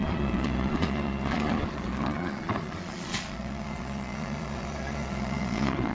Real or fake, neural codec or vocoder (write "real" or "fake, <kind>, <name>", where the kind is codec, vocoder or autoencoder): fake, vocoder, Vocos